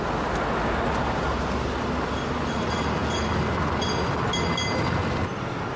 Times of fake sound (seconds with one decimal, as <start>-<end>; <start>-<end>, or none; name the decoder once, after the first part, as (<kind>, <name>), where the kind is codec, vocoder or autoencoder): none